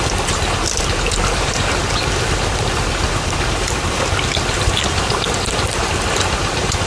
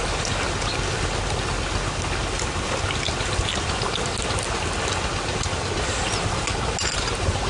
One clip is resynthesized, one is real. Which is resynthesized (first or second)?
first